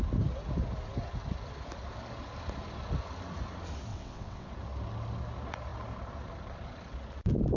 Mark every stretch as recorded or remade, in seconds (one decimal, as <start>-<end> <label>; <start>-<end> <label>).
0.0-3.9 recorded; 3.9-4.5 remade; 4.5-7.6 recorded